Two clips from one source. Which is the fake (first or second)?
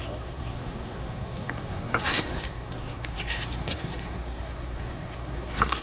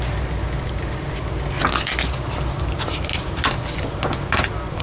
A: first